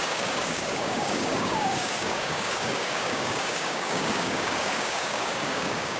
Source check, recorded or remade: remade